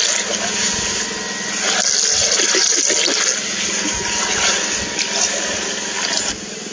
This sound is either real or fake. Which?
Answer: real